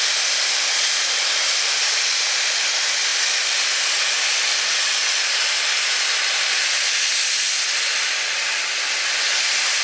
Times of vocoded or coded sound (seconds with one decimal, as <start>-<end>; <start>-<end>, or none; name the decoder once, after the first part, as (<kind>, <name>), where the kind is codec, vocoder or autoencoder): none